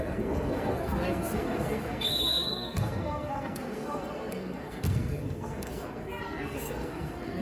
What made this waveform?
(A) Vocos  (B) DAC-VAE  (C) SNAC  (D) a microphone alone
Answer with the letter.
C